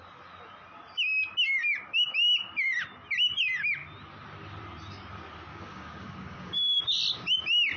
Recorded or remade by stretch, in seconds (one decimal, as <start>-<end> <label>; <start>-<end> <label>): 0.0-5.5 recorded; 5.5-6.8 remade; 6.8-7.8 recorded